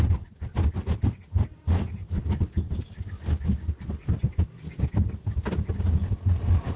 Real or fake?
real